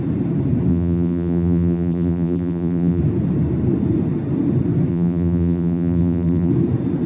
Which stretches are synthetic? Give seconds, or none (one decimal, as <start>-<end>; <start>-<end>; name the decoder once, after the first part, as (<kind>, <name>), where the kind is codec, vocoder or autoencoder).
0.7-3.0 (vocoder, BigVGAN v2); 4.9-6.5

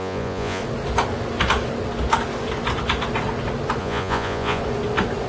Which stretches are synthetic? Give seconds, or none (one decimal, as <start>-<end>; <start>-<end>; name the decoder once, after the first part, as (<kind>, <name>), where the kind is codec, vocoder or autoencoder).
0.0-0.6 (vocoder, Vocos); 3.8-4.6

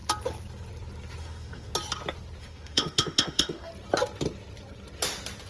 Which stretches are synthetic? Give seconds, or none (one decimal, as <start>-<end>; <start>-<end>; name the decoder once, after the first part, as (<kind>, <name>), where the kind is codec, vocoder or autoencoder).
1.2-1.7 (autoencoder, DAC-VAE); 2.4-3.7